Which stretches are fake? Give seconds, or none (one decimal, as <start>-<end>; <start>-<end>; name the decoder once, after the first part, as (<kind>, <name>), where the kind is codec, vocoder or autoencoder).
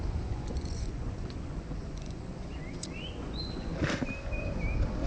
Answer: 0.0-3.7 (vocoder, Vocos)